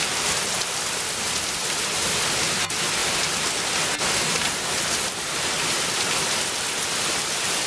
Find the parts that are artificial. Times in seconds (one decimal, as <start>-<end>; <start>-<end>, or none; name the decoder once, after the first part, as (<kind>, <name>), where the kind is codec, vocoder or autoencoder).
3.0-3.6 (vocoder, BigVGAN v2)